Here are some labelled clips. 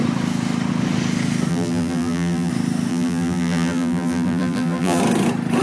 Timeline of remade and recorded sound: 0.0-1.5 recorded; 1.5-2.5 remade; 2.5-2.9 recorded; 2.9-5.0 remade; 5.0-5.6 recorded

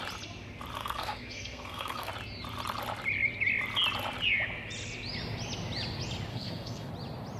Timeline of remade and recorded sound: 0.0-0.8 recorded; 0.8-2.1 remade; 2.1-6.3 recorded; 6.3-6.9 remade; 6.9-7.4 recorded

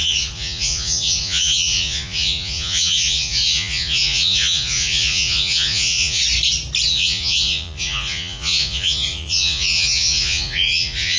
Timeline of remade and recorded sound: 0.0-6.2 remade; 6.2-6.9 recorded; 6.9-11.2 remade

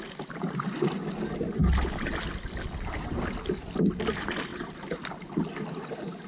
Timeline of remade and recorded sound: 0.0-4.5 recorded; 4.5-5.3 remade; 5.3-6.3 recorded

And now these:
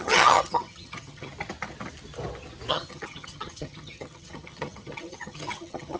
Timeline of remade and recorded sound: 0.0-1.3 remade; 1.3-2.7 recorded; 2.7-6.0 remade